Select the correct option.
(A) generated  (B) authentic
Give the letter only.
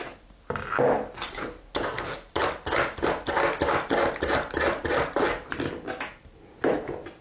B